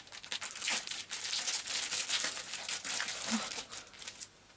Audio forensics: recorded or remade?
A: recorded